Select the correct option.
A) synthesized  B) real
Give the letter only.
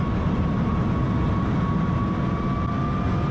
B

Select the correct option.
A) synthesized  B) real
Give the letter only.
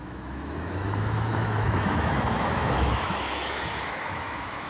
A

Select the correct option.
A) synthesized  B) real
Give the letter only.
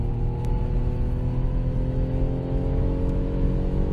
A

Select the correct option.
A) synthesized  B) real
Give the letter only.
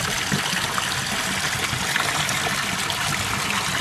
B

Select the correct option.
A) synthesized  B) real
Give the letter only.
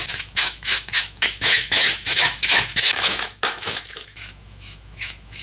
A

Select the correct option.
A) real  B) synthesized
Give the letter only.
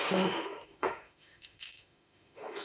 B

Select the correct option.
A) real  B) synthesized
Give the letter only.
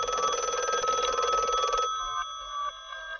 A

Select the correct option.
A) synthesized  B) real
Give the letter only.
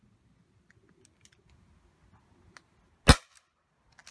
B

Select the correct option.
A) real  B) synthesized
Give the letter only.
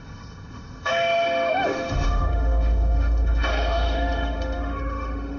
B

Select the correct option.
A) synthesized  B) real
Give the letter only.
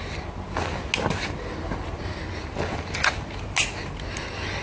B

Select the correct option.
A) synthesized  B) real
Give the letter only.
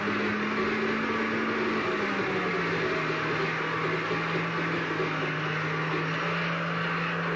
B